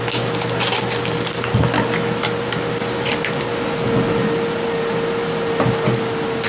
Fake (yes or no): no